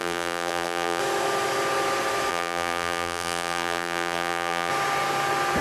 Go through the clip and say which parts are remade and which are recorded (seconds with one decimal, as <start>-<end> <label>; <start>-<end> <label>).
0.0-1.0 remade; 1.0-2.3 recorded; 2.3-4.7 remade; 4.7-5.6 recorded